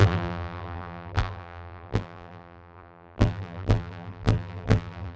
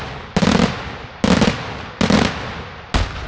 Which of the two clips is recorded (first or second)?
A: second